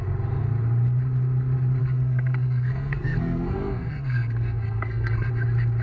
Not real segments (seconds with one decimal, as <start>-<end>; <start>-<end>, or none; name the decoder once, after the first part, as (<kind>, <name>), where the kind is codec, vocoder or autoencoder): 1.8-5.3 (codec, SNAC)